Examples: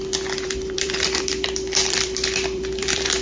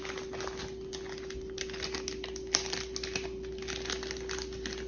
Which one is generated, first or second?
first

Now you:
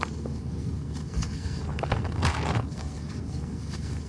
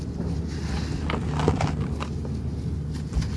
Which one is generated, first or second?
first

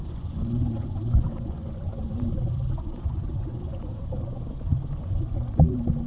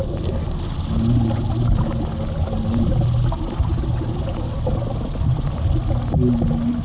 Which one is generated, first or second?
first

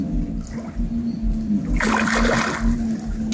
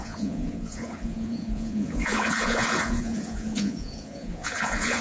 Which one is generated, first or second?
second